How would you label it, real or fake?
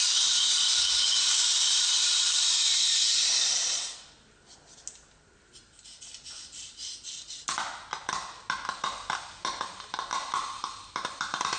real